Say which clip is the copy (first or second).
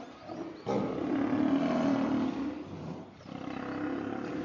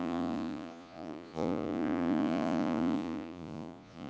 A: second